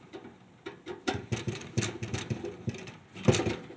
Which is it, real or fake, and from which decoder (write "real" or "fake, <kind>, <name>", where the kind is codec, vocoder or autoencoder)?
fake, vocoder, BigVGAN v2